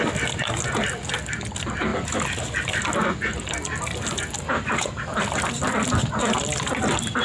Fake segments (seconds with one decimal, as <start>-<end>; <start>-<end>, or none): none